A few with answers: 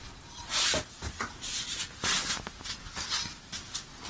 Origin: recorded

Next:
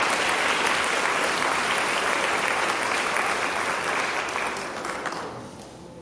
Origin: recorded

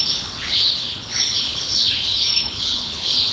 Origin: remade